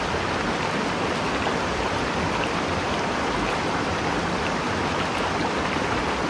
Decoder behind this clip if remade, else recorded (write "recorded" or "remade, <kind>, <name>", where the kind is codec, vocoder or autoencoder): recorded